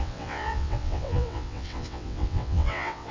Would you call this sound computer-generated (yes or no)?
yes